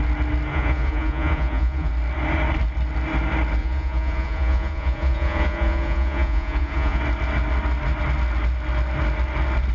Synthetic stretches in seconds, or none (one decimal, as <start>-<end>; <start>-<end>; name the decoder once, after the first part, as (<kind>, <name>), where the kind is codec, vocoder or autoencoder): 0.5-1.9 (vocoder, Vocos); 3.6-7.0